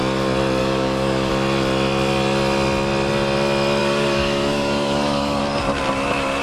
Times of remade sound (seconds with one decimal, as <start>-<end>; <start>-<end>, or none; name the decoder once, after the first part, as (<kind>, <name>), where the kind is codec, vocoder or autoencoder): 0.6-1.3 (codec, DAC); 3.8-5.4

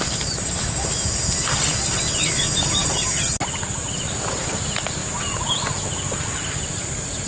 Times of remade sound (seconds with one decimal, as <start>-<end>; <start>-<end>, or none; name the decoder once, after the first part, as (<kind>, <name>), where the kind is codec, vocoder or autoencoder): none

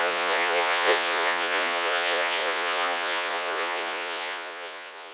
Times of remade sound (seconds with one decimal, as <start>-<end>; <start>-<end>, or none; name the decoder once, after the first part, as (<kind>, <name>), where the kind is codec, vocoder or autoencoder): 0.0-5.1 (vocoder, Vocos)

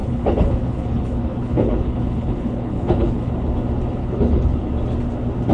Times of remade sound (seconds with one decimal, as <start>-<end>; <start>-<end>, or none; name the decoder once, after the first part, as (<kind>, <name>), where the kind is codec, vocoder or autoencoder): 0.0-3.3 (codec, HILCodec); 4.0-4.7

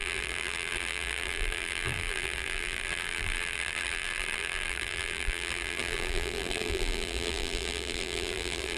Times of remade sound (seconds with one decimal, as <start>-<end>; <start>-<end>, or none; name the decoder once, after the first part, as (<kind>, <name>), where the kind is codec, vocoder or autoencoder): 0.0-8.8 (vocoder, BigVGAN v2)